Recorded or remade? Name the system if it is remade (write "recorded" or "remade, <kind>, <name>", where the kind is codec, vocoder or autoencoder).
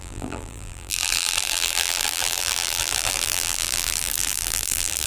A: remade, vocoder, BigVGAN v2